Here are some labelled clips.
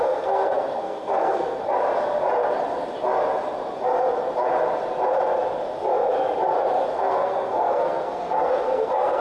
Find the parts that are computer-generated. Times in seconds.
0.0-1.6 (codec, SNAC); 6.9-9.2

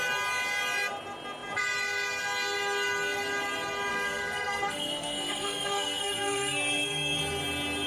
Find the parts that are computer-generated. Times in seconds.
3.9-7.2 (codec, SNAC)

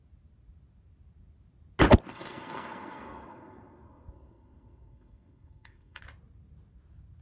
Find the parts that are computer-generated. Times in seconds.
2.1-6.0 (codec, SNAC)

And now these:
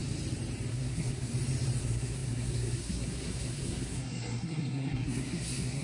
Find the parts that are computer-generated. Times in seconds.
0.7-1.3 (codec, SNAC); 1.8-5.8